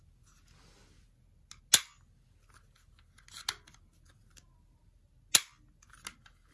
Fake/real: real